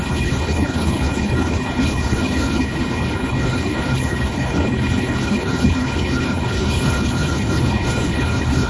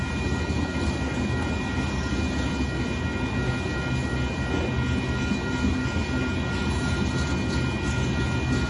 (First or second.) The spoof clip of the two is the first